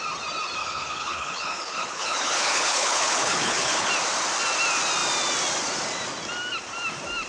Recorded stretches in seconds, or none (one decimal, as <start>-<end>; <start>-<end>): 0.0-0.6; 3.9-7.3